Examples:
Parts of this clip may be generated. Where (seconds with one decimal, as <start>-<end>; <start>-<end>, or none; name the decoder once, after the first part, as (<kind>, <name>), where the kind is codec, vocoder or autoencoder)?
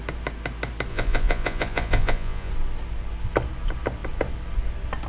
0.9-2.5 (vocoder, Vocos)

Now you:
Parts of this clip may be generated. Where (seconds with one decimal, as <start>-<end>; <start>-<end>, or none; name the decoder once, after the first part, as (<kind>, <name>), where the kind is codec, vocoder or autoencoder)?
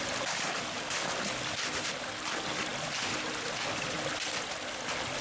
none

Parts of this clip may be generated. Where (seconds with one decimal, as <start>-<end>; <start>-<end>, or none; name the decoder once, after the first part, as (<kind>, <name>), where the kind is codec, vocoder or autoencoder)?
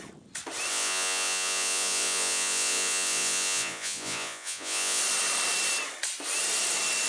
0.7-5.0 (vocoder, Vocos)